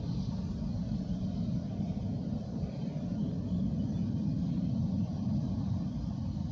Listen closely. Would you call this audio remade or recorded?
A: recorded